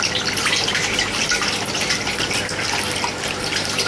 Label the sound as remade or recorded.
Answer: recorded